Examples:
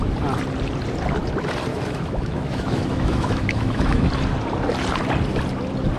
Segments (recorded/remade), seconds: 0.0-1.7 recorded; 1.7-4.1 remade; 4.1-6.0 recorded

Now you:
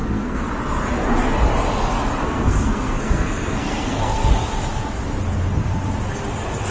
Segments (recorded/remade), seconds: 0.0-0.5 remade; 0.5-2.2 recorded; 2.2-4.3 remade; 4.3-6.7 recorded

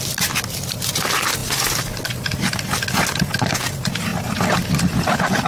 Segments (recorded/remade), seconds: 0.0-5.5 recorded

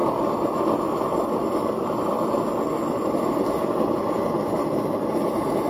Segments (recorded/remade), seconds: 0.0-5.7 recorded

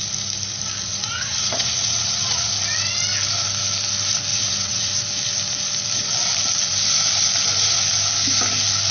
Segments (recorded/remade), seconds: 0.0-0.9 recorded; 0.9-2.5 remade; 2.5-4.3 recorded; 4.3-4.9 remade; 4.9-8.9 recorded

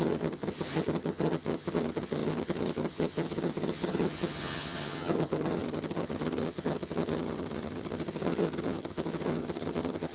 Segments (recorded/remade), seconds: 0.0-10.1 remade